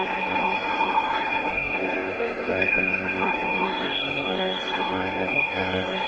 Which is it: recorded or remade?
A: remade